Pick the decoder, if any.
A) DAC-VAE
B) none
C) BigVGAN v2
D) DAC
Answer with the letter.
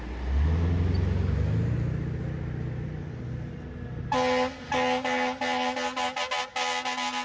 B